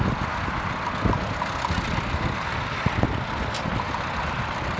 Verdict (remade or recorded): recorded